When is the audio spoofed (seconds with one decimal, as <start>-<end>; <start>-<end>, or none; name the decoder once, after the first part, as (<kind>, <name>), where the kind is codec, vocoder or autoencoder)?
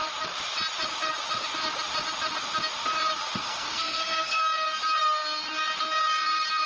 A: 3.4-4.4 (codec, SNAC)